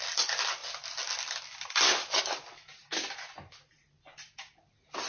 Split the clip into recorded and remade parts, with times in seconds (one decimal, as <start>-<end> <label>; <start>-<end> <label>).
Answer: 0.0-5.1 recorded